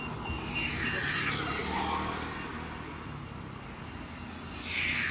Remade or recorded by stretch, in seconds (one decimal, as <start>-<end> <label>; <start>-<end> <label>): 0.0-5.1 recorded